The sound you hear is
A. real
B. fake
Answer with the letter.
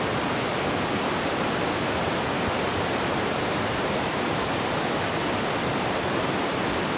A